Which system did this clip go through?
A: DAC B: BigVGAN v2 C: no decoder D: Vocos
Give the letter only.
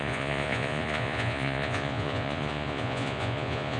D